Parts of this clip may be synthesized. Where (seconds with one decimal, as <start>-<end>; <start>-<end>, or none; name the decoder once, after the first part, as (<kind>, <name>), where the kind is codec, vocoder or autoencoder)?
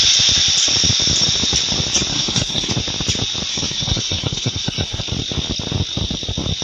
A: 2.1-2.7 (codec, SNAC); 3.5-5.0